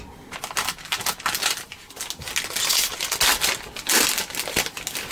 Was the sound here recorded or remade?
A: recorded